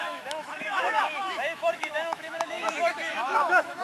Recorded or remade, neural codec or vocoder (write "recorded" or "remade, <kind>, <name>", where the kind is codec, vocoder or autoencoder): remade, autoencoder, DAC-VAE